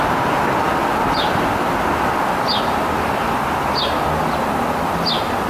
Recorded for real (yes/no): yes